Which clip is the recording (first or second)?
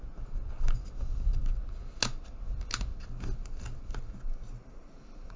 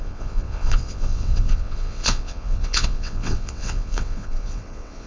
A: first